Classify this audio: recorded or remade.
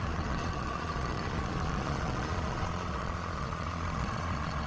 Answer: remade